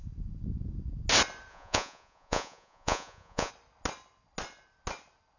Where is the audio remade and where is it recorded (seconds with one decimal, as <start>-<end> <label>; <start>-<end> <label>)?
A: 0.0-1.5 recorded; 1.5-3.5 remade; 3.5-5.4 recorded